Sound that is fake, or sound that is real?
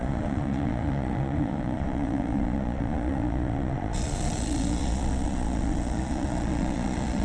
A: fake